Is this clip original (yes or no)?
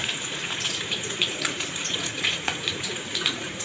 no